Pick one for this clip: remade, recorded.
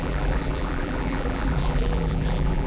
remade